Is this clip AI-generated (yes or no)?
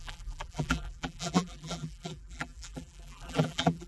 yes